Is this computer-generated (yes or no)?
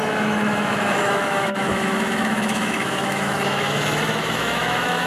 yes